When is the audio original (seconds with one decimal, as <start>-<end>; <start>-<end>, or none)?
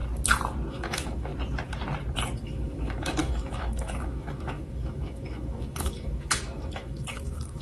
0.0-0.7; 1.3-2.4